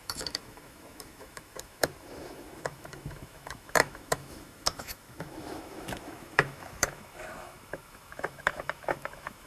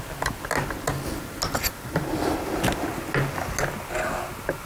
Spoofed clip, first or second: first